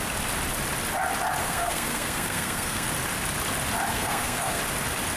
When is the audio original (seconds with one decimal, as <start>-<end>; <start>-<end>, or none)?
0.0-1.4; 2.9-3.9; 4.6-5.2